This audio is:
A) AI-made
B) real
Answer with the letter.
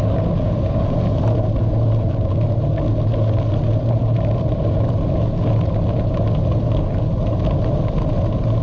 B